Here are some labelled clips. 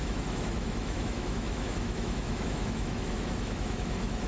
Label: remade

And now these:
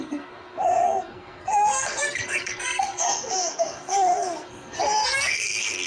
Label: remade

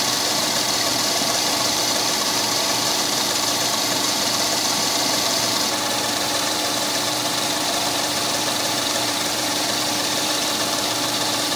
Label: remade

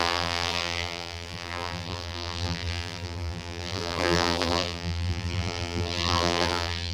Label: remade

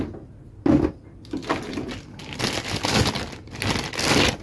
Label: recorded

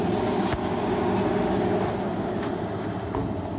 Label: recorded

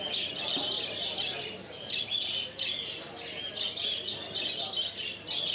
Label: recorded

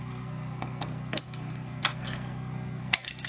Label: remade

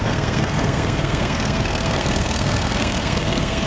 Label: remade